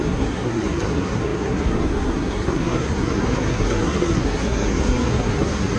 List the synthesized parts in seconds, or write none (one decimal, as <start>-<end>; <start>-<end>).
0.0-5.8